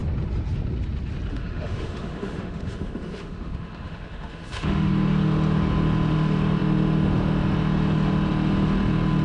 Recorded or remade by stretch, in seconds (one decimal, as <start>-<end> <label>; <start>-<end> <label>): 0.0-1.3 recorded; 1.3-4.9 remade; 4.9-9.2 recorded